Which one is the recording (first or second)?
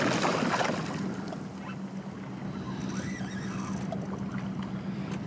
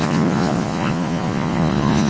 first